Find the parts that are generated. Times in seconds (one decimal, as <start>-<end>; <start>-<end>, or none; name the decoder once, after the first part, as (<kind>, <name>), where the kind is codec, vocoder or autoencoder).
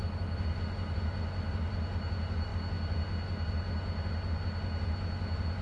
none